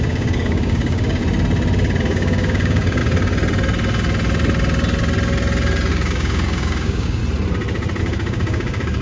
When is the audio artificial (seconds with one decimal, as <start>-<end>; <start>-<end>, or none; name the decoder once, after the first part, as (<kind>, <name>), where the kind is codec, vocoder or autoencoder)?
0.0-1.2 (codec, DAC); 2.0-3.0; 5.9-7.2; 8.0-9.0